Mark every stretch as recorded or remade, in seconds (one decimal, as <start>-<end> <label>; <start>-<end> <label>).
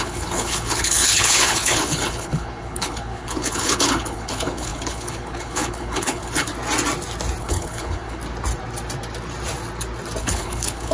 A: 0.0-6.5 remade; 6.5-7.4 recorded; 7.4-8.2 remade; 8.2-10.2 recorded; 10.2-10.9 remade